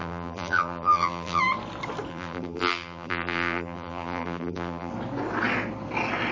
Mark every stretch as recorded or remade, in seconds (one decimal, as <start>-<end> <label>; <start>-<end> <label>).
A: 0.0-1.4 remade; 1.4-2.1 recorded; 2.1-4.9 remade; 4.9-6.3 recorded